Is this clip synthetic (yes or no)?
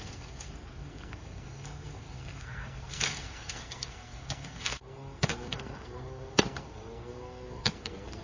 yes